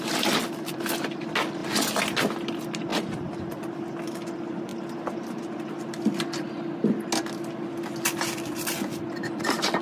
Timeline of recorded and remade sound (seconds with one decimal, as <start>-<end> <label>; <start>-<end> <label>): 0.0-2.9 recorded; 2.9-3.6 remade; 3.6-9.8 recorded